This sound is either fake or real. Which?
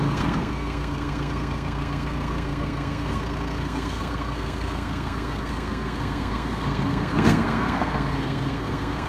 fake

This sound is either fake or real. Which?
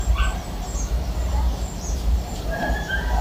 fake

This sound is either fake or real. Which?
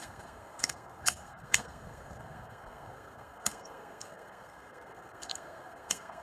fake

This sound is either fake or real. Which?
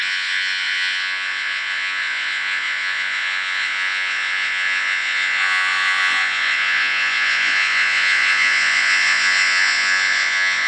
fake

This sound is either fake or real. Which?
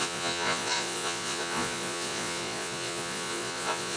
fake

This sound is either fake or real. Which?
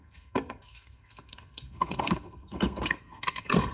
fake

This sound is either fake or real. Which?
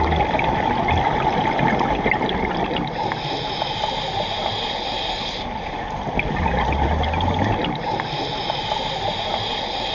real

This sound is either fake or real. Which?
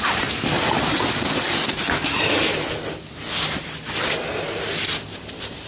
real